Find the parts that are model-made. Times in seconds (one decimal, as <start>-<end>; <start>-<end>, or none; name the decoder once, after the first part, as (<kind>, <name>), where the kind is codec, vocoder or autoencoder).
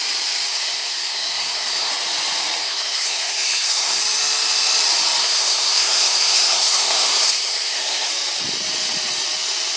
0.5-1.9 (codec, SNAC); 2.6-4.0; 5.2-8.1